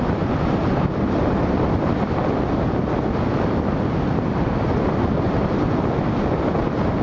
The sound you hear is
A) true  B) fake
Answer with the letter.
A